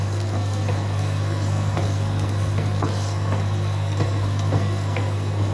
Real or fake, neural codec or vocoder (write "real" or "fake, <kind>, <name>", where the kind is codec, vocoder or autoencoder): fake, codec, SNAC